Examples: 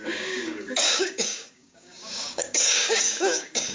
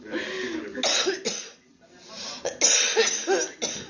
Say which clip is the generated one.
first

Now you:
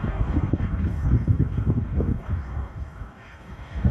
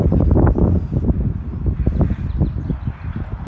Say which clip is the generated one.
first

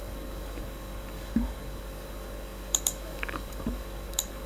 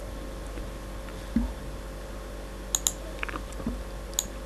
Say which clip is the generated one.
first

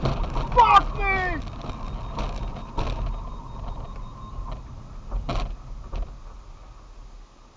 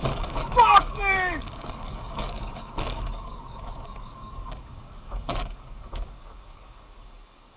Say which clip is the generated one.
second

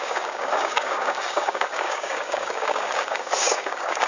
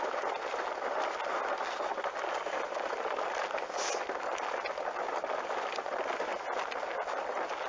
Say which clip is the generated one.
first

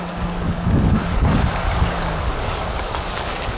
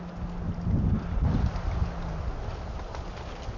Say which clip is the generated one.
first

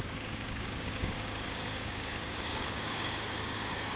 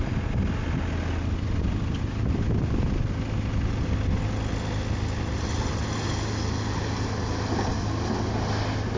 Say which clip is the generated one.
first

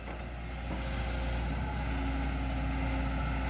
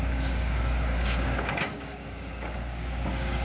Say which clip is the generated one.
second